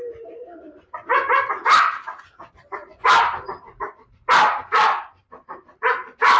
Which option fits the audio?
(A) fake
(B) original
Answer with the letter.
A